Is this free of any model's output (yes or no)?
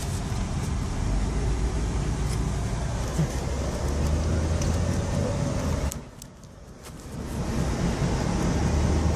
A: yes